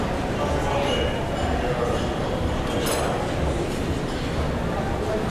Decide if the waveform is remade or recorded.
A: recorded